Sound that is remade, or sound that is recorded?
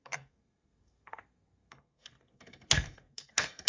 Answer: remade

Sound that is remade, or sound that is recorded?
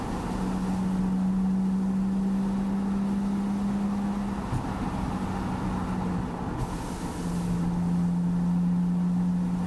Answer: recorded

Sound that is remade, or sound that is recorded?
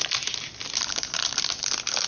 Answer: recorded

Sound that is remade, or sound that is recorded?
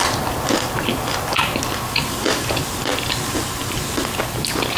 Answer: recorded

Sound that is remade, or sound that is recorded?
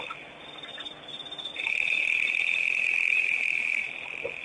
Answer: remade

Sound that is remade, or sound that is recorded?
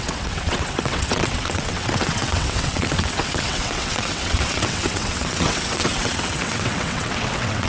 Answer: remade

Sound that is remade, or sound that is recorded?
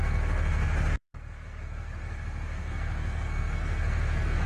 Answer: remade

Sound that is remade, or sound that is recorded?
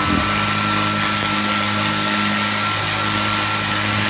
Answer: recorded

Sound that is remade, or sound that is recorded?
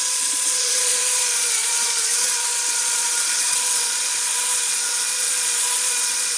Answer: remade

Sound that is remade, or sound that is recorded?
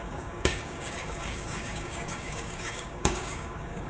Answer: remade